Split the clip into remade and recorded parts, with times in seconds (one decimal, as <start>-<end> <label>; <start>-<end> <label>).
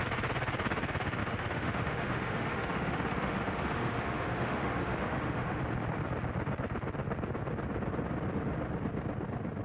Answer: 0.0-1.2 recorded; 1.2-5.6 remade; 5.6-9.6 recorded